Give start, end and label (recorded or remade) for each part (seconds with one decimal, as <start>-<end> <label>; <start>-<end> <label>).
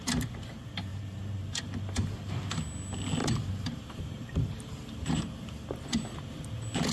0.0-0.9 recorded; 0.9-1.6 remade; 1.6-3.2 recorded; 3.2-5.2 remade; 5.2-6.9 recorded